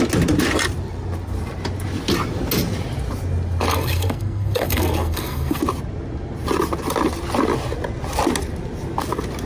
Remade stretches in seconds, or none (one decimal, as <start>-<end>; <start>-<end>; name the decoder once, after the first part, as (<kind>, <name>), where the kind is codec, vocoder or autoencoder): 3.7-5.6 (codec, SNAC)